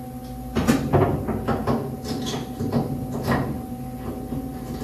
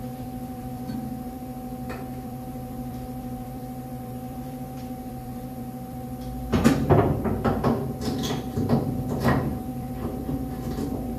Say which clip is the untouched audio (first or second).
first